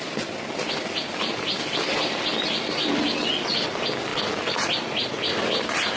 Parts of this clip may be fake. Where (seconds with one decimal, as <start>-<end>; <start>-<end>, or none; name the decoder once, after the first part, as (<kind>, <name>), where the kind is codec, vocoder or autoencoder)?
none